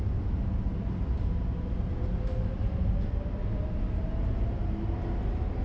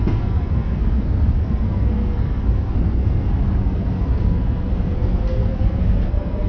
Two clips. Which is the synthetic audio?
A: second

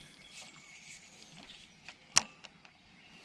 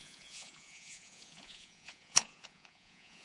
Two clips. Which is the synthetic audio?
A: second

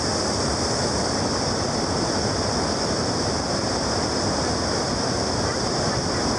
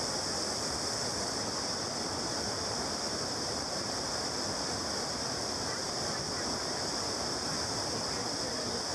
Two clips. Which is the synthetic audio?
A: second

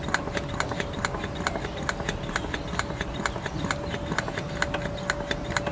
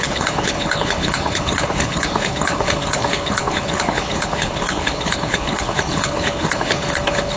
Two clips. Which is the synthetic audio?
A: second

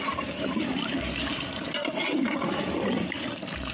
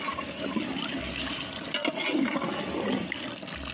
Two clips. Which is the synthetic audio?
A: first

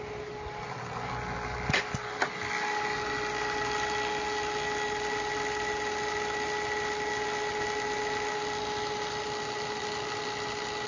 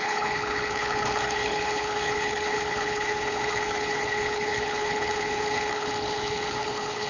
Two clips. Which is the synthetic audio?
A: second